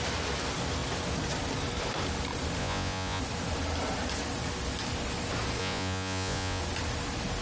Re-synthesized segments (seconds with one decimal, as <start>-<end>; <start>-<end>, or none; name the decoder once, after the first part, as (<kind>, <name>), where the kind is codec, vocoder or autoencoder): 2.6-3.2 (vocoder, Vocos); 5.6-6.6